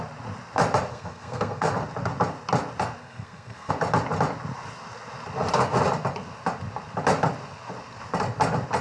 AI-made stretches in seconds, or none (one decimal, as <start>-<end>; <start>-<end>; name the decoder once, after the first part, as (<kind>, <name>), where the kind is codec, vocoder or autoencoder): 0.9-1.7 (codec, SNAC); 3.0-3.7